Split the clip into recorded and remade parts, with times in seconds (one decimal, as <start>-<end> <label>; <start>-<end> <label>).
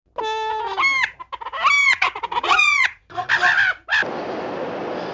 0.0-1.8 recorded; 1.8-3.3 remade; 3.3-5.1 recorded